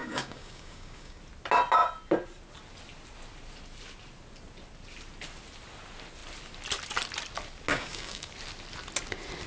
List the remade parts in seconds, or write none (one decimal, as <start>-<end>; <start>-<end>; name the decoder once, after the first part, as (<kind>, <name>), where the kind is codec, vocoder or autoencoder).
0.0-1.2 (codec, DAC); 7.7-8.3